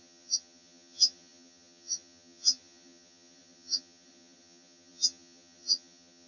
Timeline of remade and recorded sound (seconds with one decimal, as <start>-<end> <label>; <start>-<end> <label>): 0.0-6.3 remade